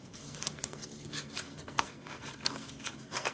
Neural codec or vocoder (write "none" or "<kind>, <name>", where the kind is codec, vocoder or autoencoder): codec, SNAC